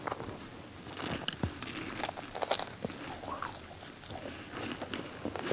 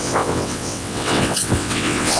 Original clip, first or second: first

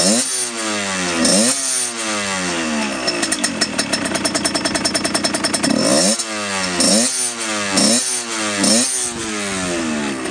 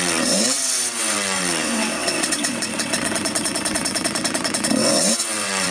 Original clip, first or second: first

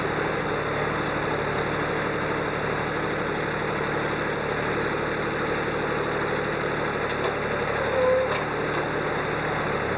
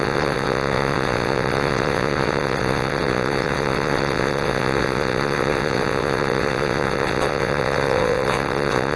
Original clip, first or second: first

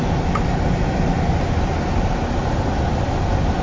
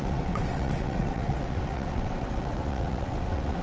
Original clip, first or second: first